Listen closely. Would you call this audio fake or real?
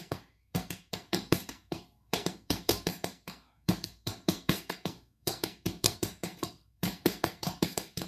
fake